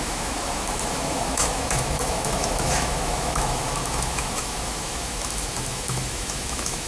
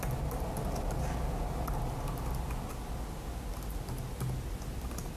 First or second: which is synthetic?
first